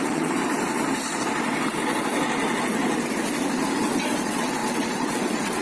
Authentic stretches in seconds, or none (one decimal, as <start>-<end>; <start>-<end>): 0.4-3.8